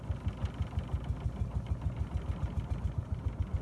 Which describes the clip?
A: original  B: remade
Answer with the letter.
A